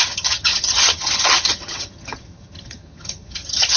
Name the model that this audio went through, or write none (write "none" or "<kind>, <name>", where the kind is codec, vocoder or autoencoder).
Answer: vocoder, HiFi-GAN